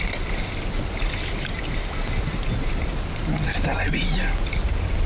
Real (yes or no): yes